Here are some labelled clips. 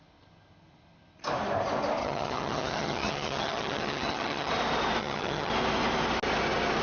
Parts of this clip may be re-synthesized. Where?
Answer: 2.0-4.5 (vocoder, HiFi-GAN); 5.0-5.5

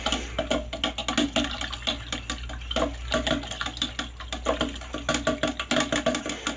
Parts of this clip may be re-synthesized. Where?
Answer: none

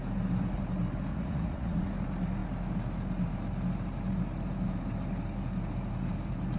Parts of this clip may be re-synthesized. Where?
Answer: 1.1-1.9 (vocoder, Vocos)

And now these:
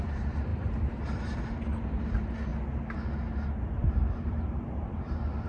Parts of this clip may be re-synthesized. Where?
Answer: 0.0-2.5 (vocoder, BigVGAN v2); 4.1-5.5

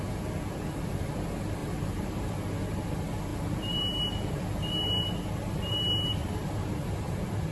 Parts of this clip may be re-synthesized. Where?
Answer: 1.6-2.3 (vocoder, BigVGAN v2); 3.3-7.5